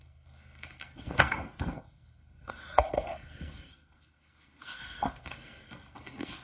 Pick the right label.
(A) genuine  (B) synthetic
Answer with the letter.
B